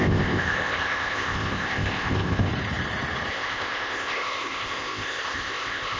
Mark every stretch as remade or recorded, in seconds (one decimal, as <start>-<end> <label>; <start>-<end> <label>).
0.0-2.5 remade; 2.5-3.3 recorded; 3.3-6.0 remade